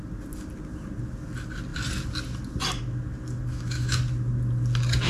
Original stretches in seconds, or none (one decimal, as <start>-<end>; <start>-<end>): 0.0-3.5; 4.0-5.1